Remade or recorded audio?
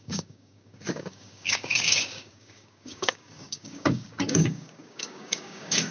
remade